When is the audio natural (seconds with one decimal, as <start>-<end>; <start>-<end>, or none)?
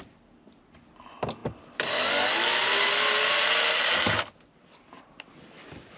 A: 0.0-6.0